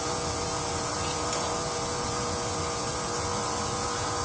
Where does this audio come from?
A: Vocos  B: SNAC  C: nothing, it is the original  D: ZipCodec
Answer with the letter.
A